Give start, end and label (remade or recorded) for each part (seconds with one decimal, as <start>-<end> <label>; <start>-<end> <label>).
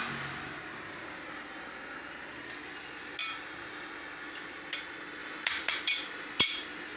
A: 0.0-3.2 recorded; 3.2-3.9 remade; 3.9-5.2 recorded; 5.2-7.0 remade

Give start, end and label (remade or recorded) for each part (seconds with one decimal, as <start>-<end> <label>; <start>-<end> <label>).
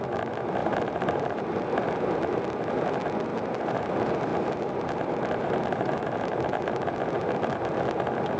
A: 0.0-0.6 recorded; 0.6-1.4 remade; 1.4-3.3 recorded; 3.3-3.9 remade; 3.9-4.3 recorded; 4.3-6.9 remade; 6.9-8.4 recorded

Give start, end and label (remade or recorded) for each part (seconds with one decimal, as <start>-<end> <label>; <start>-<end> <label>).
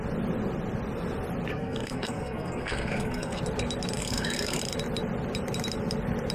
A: 0.0-1.5 recorded; 1.5-3.4 remade; 3.4-4.0 recorded; 4.0-4.6 remade; 4.6-6.3 recorded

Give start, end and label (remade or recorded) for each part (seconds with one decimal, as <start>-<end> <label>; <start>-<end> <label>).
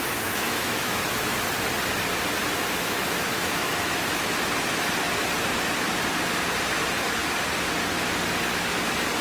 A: 0.0-1.3 remade; 1.3-2.8 recorded; 2.8-4.0 remade; 4.0-9.2 recorded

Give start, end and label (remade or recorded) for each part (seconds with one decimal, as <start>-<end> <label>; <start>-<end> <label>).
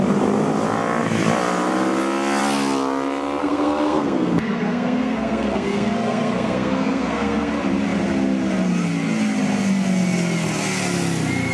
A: 0.0-3.4 recorded; 3.4-7.5 remade; 7.5-11.5 recorded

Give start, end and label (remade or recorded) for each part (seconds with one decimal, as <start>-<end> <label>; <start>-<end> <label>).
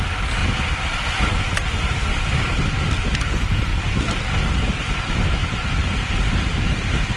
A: 0.0-5.4 recorded; 5.4-6.7 remade; 6.7-7.2 recorded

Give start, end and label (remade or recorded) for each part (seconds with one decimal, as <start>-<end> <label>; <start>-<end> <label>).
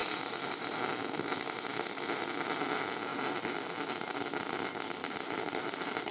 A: 0.0-0.8 remade; 0.8-3.1 recorded; 3.1-3.7 remade; 3.7-5.0 recorded; 5.0-6.1 remade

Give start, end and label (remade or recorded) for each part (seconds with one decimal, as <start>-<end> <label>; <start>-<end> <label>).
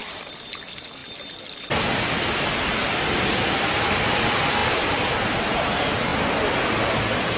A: 0.0-1.0 remade; 1.0-3.5 recorded; 3.5-6.1 remade; 6.1-7.4 recorded